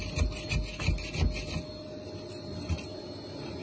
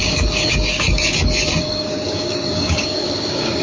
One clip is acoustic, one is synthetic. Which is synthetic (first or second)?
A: second